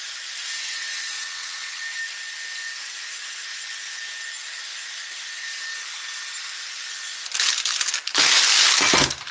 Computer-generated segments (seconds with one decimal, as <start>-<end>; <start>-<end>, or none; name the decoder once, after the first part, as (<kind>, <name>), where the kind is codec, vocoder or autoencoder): 0.6-1.8 (vocoder, WaveNeXt)